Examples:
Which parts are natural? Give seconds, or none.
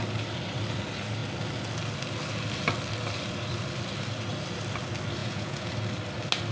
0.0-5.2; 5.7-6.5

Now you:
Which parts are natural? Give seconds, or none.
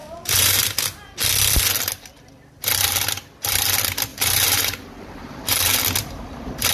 0.6-4.1; 5.3-6.7